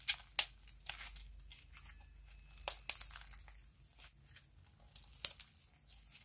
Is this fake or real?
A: real